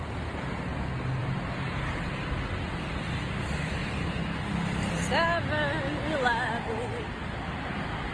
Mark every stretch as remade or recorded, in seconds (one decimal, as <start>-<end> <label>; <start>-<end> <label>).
0.0-1.2 recorded; 1.2-2.3 remade; 2.3-8.1 recorded